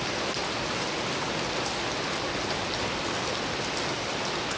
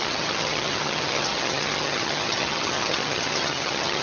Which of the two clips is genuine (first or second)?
first